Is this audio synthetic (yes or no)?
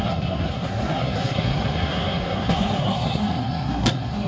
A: yes